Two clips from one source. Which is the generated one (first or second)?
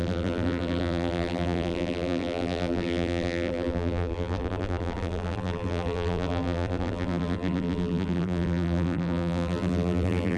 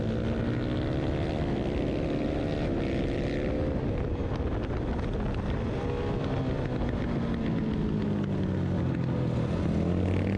first